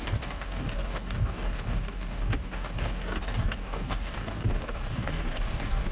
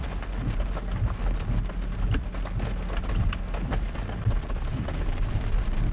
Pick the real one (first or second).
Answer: second